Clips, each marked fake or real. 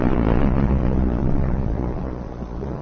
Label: fake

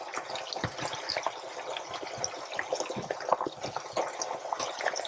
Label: real